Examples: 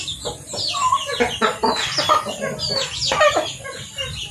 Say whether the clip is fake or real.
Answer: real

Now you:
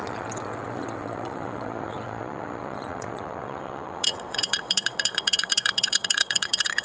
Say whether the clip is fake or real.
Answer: fake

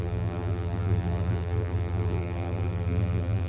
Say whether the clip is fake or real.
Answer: fake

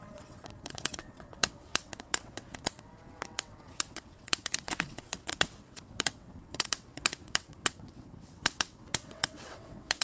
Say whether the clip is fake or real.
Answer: fake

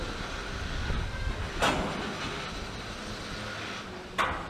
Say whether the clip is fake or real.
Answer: real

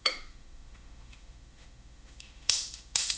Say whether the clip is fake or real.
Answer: fake